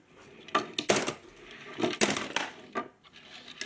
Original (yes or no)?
yes